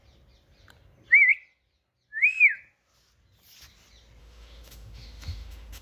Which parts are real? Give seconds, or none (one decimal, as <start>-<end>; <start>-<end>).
0.0-4.2